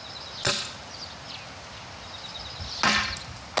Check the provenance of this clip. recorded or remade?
recorded